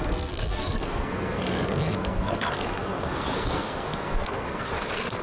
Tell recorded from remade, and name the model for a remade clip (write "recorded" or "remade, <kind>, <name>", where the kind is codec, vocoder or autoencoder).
remade, codec, SNAC